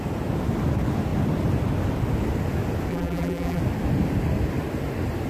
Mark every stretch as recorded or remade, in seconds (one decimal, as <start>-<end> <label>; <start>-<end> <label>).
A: 0.0-2.9 recorded; 2.9-3.6 remade; 3.6-5.3 recorded